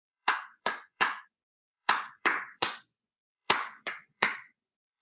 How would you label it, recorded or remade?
remade